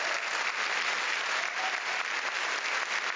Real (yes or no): yes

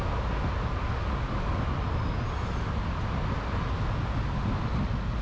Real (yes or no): yes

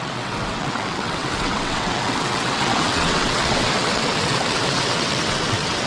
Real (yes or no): no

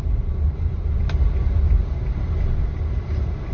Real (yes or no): yes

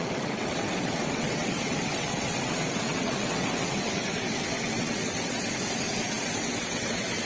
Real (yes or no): no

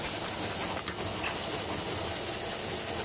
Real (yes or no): yes